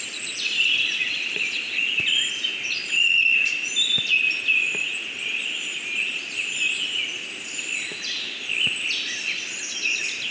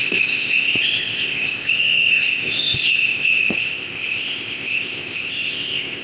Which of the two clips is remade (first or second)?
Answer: second